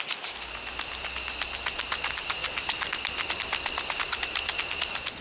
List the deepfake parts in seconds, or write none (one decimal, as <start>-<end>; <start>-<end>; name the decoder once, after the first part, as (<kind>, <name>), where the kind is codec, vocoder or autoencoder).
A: none

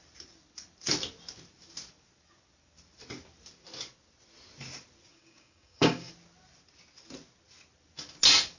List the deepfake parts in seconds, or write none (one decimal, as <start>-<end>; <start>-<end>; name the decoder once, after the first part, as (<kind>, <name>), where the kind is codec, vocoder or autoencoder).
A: 5.1-6.1 (codec, DAC)

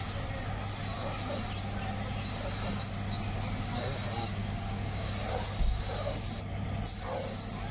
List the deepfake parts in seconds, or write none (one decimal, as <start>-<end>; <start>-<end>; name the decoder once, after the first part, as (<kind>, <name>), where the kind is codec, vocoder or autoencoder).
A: 4.4-5.1 (codec, DAC)

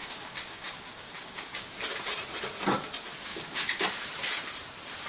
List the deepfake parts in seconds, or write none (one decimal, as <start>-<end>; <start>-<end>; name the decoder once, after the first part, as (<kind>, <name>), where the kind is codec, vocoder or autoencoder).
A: 0.0-1.7 (codec, DAC); 3.3-3.8

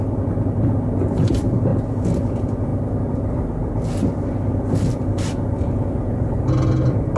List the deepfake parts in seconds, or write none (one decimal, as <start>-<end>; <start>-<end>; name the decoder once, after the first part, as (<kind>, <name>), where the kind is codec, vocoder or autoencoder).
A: none

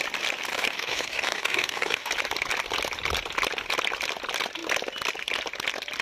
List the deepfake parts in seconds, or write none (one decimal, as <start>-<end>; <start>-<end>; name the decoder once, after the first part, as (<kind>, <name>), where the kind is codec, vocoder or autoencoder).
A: 0.5-2.1 (codec, DAC)